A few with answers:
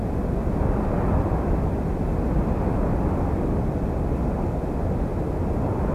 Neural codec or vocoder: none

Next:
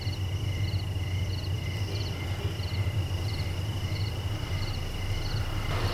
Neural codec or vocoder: none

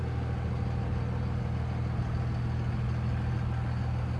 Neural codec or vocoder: none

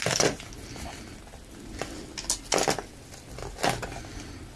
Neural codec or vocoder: none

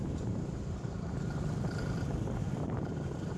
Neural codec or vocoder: vocoder, BigVGAN v2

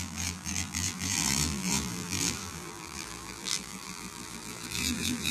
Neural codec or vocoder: vocoder, BigVGAN v2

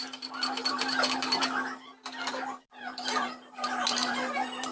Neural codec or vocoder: vocoder, BigVGAN v2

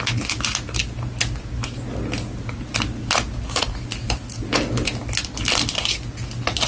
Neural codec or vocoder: none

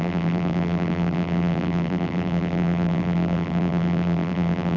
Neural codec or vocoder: vocoder, BigVGAN v2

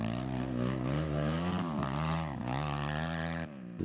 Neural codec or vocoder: vocoder, BigVGAN v2